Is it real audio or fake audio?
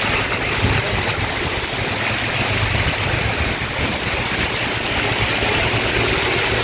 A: real